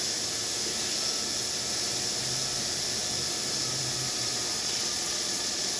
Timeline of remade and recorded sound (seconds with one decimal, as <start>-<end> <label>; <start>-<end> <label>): 0.0-4.6 recorded; 4.6-5.8 remade